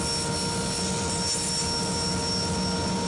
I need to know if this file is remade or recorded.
recorded